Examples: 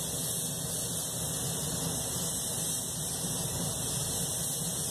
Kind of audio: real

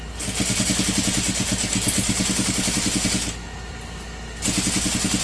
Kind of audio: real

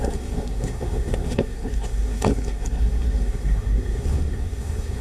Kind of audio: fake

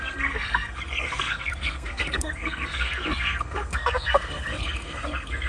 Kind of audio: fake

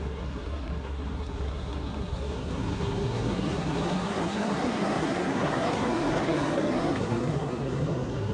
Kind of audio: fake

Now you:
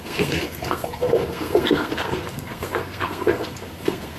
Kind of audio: fake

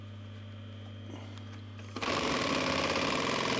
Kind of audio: real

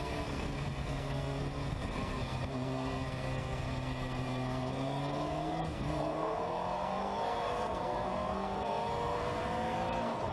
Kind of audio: fake